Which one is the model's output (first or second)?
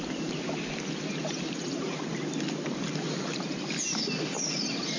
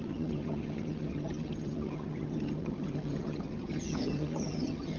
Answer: second